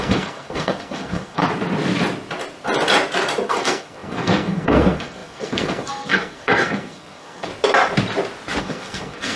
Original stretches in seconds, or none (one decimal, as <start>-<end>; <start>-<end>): 1.4-3.5; 7.5-8.6